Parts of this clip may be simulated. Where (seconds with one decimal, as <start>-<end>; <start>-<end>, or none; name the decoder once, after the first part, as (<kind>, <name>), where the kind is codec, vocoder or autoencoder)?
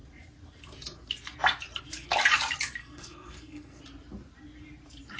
2.8-3.8 (codec, SNAC)